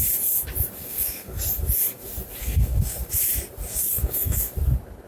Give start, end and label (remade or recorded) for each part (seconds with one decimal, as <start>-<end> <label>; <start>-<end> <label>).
0.0-0.8 recorded; 0.8-1.4 remade; 1.4-2.4 recorded; 2.4-3.1 remade; 3.1-3.7 recorded; 3.7-4.5 remade; 4.5-5.1 recorded